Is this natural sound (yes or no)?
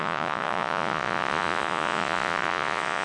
no